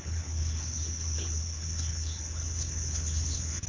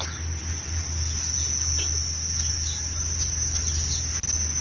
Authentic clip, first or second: second